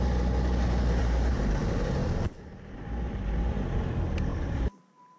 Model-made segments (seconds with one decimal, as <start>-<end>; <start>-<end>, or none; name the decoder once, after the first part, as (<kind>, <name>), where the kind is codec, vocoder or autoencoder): 1.0-1.6 (vocoder, BigVGAN v2); 4.3-4.8